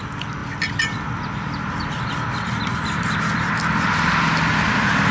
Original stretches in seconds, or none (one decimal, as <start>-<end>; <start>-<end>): 0.0-0.4; 3.5-5.1